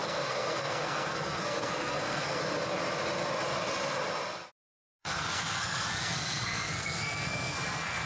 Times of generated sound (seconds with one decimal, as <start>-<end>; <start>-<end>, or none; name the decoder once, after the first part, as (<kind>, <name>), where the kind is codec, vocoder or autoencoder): 0.0-2.4 (codec, SNAC); 5.0-8.1